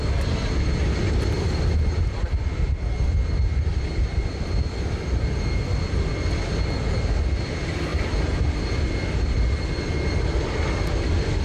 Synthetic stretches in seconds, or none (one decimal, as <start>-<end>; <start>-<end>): none